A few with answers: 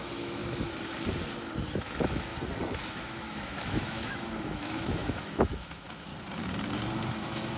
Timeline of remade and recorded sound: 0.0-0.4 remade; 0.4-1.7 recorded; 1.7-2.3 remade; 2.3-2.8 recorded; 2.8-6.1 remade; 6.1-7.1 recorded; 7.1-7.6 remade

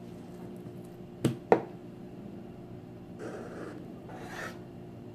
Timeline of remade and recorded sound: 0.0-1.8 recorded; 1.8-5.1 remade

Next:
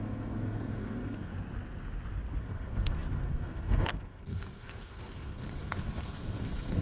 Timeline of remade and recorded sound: 0.0-1.3 remade; 1.3-2.4 recorded; 2.4-6.8 remade

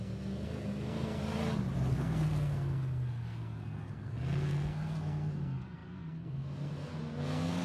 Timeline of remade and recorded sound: 0.0-1.2 remade; 1.2-1.9 recorded; 1.9-7.6 remade

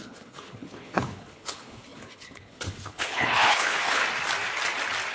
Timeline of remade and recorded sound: 0.0-4.0 remade; 4.0-5.1 recorded